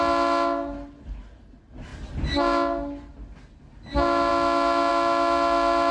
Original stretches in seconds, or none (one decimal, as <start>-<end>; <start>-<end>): 0.0-5.9